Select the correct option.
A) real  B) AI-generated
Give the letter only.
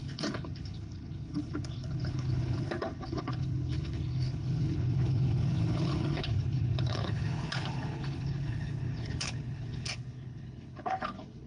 B